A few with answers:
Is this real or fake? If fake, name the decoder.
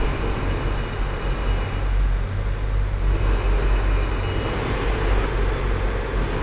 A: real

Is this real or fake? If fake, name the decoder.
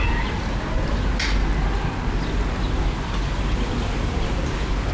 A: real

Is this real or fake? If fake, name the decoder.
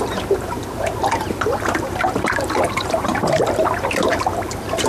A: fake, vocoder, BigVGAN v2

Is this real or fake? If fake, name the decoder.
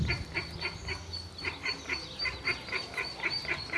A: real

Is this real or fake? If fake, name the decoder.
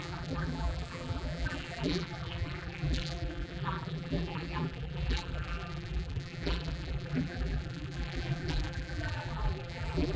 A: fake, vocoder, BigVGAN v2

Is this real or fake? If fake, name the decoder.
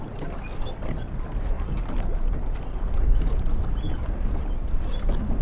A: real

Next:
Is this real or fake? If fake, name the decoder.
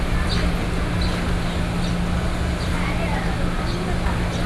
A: real